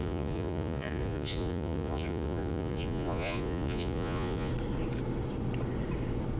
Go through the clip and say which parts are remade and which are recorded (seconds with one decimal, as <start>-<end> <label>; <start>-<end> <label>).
0.0-4.5 remade; 4.5-6.4 recorded